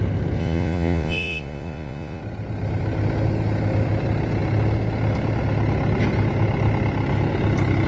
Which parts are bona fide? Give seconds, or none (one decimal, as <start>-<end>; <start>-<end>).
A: 0.0-0.4; 2.2-7.9